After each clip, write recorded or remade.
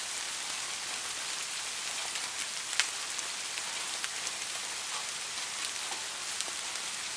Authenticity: recorded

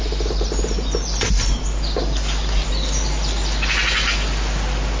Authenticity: recorded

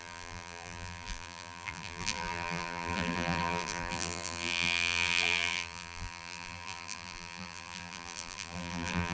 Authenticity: remade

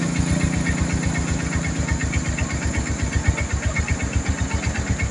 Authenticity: recorded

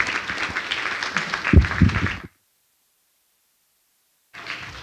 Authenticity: recorded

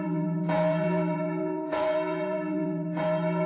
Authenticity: remade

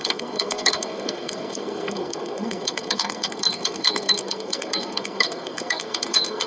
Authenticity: remade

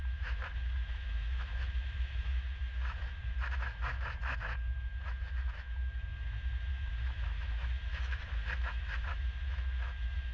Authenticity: remade